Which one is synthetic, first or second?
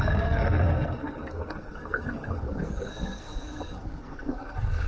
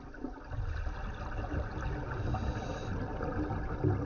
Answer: first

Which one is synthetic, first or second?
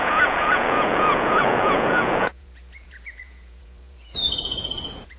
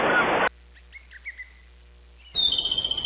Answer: first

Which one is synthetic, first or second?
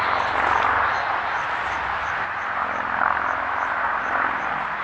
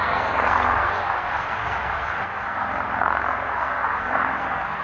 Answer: second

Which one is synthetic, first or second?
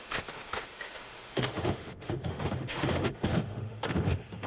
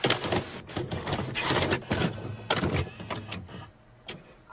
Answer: first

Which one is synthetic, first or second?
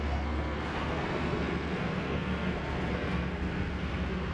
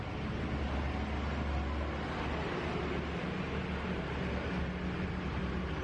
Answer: first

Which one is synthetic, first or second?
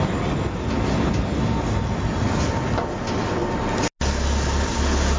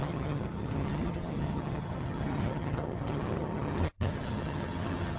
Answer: second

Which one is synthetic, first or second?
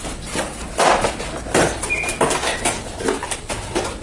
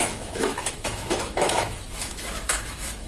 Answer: second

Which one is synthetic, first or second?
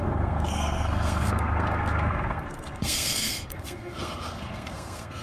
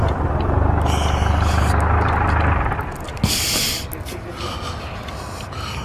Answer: first